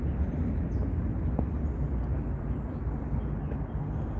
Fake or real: real